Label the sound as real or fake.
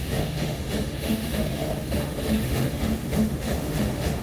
fake